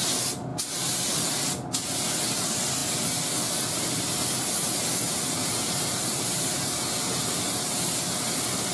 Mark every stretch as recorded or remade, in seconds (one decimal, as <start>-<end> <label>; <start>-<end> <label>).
0.0-5.4 recorded; 5.4-6.7 remade; 6.7-8.7 recorded